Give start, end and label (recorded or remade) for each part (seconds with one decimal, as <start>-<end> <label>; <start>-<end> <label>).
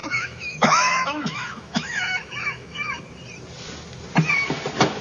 0.0-3.0 remade; 3.0-5.0 recorded